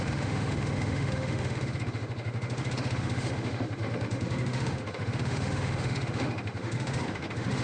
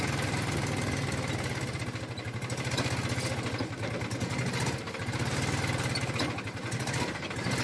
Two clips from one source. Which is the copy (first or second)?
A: first